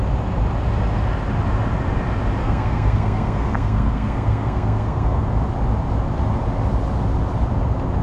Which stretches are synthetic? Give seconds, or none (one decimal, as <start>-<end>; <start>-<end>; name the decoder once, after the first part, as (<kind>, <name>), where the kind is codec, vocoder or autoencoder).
2.4-5.2 (codec, SNAC)